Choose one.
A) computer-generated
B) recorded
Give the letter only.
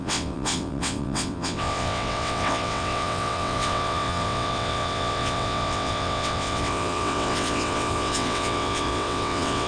A